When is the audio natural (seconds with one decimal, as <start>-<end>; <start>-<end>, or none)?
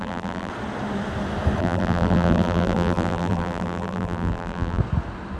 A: 0.5-1.6; 4.8-5.4